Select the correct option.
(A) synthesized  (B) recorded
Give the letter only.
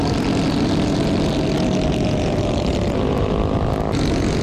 B